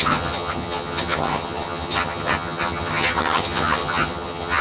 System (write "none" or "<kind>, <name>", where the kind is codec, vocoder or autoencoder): vocoder, HiFi-GAN